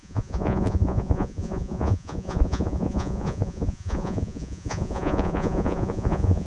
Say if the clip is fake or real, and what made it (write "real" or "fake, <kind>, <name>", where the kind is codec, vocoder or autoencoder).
fake, vocoder, Vocos